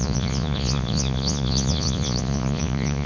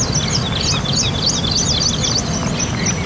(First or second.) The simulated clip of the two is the first